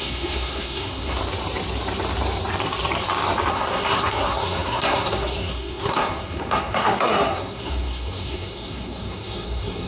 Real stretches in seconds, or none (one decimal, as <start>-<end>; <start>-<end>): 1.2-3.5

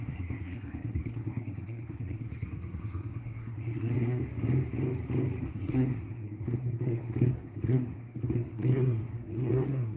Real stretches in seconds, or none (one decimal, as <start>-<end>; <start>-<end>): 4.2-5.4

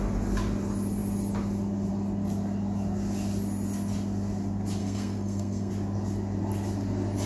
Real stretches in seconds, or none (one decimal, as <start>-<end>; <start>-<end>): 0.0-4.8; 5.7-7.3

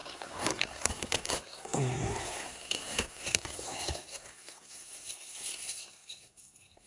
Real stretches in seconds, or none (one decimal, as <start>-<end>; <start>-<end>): none

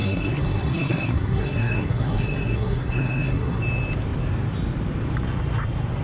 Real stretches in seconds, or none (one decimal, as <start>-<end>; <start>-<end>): 3.6-6.0